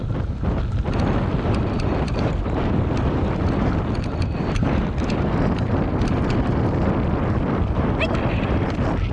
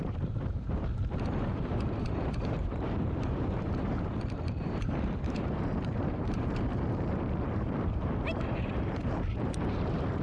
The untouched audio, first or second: first